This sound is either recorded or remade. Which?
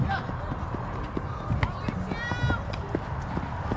recorded